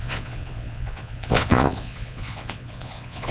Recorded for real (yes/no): no